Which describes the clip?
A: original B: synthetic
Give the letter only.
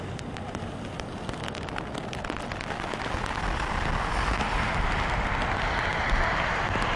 A